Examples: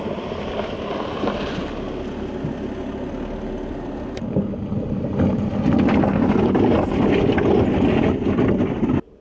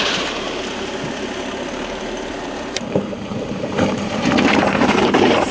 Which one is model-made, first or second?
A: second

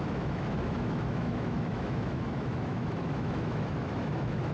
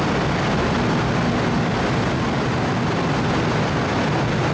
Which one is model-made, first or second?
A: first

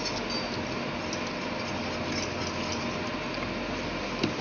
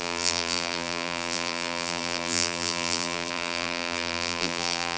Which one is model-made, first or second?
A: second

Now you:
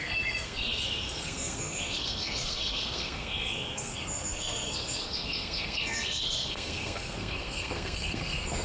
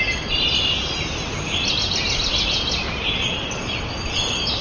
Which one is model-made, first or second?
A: first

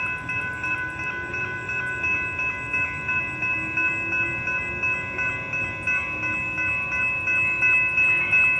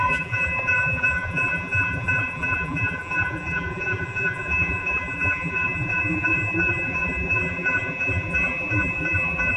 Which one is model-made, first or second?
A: second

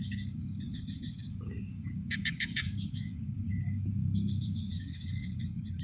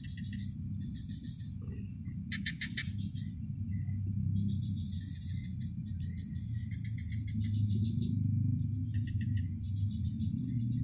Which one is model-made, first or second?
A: first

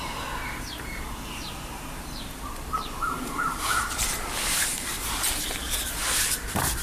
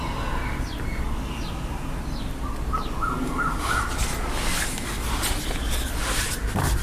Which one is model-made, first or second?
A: first